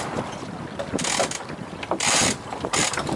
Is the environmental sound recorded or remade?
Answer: recorded